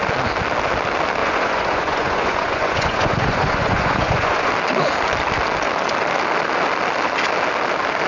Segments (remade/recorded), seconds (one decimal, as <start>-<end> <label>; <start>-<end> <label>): 0.0-1.2 recorded; 1.2-4.5 remade; 4.5-8.1 recorded